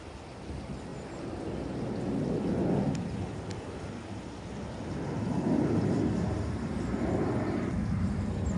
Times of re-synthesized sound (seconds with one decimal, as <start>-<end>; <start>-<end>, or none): none